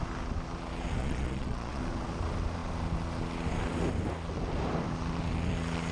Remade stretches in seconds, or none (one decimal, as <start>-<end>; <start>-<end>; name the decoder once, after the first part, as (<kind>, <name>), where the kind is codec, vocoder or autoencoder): 1.0-1.8 (vocoder, Vocos)